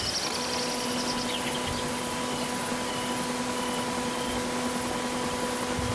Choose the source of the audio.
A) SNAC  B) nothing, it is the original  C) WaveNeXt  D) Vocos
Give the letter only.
B